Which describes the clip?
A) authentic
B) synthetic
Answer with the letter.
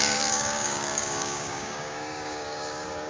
B